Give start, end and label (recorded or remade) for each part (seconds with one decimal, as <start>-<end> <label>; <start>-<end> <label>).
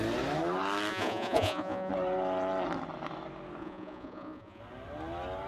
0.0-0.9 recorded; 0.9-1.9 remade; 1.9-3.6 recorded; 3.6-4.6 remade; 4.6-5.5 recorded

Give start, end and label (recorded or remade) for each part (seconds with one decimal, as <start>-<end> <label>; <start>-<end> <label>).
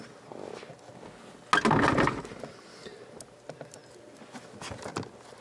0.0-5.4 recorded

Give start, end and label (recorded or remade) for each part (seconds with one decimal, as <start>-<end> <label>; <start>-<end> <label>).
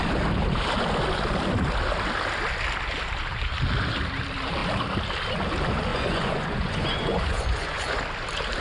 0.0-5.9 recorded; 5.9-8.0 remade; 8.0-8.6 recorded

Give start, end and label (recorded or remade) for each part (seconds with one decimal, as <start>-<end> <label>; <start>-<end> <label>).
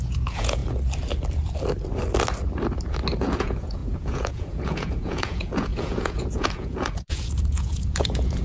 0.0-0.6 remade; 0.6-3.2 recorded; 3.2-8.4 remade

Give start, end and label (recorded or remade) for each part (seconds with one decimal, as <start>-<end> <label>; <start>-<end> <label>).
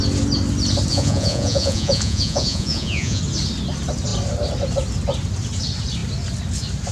0.0-0.9 recorded; 0.9-3.2 remade; 3.2-6.9 recorded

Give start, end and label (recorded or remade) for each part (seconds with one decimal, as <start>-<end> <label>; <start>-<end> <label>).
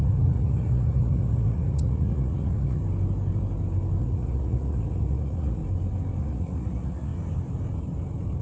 0.0-2.8 remade; 2.8-4.0 recorded; 4.0-5.6 remade; 5.6-6.2 recorded; 6.2-7.1 remade; 7.1-8.4 recorded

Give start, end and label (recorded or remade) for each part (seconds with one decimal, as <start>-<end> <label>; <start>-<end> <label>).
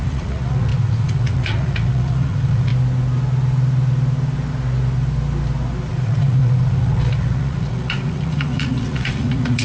0.0-2.7 remade; 2.7-5.9 recorded; 5.9-9.6 remade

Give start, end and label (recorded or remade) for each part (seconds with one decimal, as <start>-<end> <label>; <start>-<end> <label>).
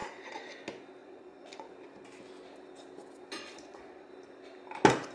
0.0-0.5 remade; 0.5-1.0 recorded; 1.0-1.7 remade; 1.7-3.4 recorded; 3.4-4.1 remade; 4.1-5.1 recorded